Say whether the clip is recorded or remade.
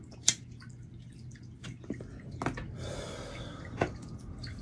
recorded